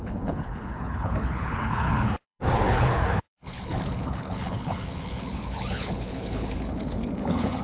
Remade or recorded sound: remade